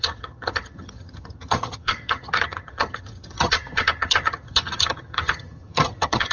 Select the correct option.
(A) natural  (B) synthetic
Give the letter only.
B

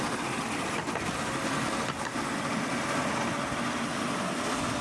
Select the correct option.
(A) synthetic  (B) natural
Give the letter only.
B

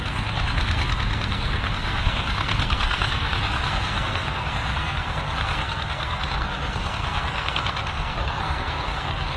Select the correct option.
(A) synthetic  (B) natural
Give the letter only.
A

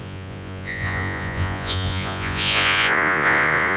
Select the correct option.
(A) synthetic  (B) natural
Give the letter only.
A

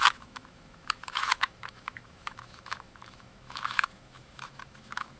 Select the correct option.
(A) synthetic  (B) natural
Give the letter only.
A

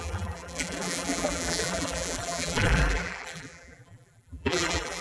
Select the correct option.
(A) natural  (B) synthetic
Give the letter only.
B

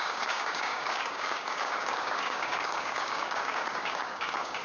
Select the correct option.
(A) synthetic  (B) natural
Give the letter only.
A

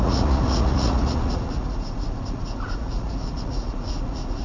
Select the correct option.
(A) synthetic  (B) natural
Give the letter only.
A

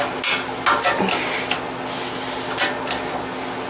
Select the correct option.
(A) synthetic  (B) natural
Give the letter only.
B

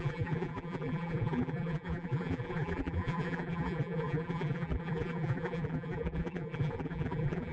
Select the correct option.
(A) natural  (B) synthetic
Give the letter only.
B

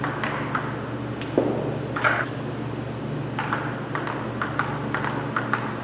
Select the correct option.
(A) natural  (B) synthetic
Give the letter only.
A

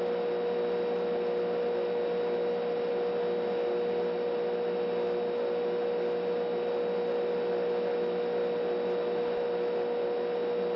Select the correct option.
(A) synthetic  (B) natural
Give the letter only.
B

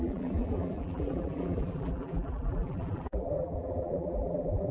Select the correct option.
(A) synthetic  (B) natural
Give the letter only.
A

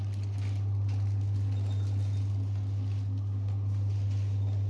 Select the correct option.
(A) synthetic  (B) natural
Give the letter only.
B